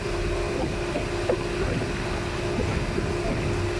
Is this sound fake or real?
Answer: real